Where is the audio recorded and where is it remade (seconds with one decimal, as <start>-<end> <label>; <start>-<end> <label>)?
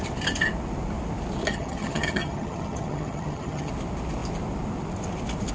0.0-1.5 recorded; 1.5-3.7 remade; 3.7-5.5 recorded